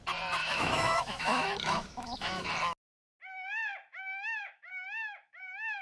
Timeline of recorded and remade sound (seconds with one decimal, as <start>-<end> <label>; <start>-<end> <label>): 0.0-0.4 recorded; 0.4-2.5 remade; 2.5-3.9 recorded; 3.9-5.8 remade